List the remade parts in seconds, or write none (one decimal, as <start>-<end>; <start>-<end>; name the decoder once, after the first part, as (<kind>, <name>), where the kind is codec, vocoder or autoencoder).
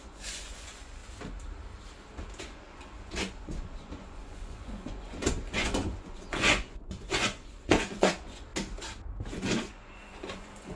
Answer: 0.0-1.0 (vocoder, Vocos); 2.4-8.5; 9.3-10.8